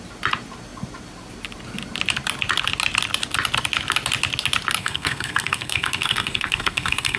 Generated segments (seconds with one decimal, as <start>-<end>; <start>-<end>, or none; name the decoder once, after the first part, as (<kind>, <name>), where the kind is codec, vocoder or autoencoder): 4.8-7.2 (codec, SNAC)